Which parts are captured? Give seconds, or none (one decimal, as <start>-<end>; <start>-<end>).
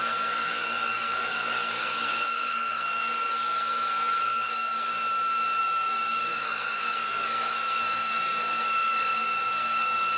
4.9-5.6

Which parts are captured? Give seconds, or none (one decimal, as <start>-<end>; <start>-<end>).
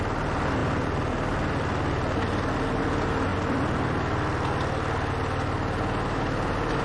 0.0-6.8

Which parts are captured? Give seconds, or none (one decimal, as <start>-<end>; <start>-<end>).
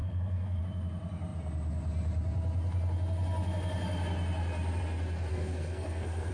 0.6-5.3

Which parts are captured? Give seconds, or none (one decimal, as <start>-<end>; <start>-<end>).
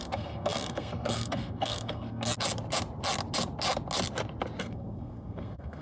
2.3-4.6